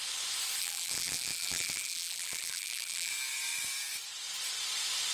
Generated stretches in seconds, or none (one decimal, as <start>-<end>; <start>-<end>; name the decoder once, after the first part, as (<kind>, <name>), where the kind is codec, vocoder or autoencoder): 0.6-3.1 (vocoder, BigVGAN v2)

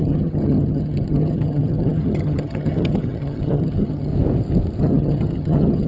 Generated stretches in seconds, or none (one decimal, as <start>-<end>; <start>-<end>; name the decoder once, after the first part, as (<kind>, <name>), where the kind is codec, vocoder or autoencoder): 0.0-4.1 (vocoder, HiFi-GAN); 4.8-5.9